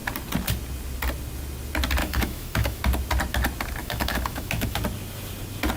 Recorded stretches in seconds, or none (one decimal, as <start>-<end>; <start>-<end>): 0.0-2.0; 2.8-3.8; 4.8-5.8